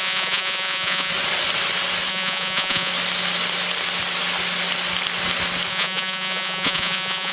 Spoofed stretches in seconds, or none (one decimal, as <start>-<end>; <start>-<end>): 0.0-1.1; 2.1-2.9; 5.7-7.3